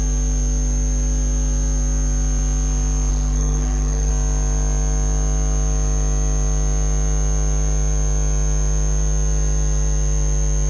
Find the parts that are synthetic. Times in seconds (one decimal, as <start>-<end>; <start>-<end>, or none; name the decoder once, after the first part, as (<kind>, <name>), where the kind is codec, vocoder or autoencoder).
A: 3.1-4.1 (codec, SNAC)